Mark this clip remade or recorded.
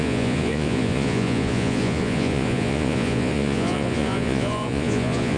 remade